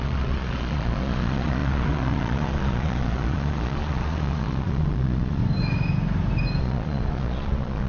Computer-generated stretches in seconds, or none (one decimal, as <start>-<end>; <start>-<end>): 0.0-5.4; 6.6-7.9